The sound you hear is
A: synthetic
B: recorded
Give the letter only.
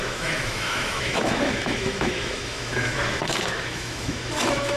A